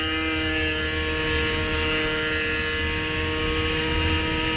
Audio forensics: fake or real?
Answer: real